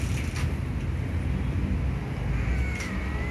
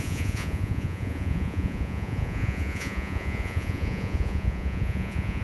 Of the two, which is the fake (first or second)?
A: second